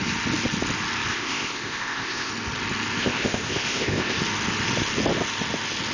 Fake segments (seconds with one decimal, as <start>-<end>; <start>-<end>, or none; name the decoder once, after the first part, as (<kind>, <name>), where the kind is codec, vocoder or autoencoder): 1.1-2.3 (codec, ZipCodec); 3.0-4.2